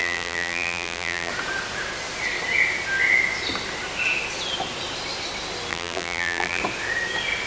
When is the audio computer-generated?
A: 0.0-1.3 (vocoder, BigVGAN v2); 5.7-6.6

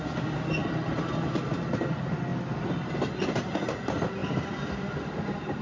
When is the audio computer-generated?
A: 0.6-1.1 (vocoder, BigVGAN v2); 4.2-5.6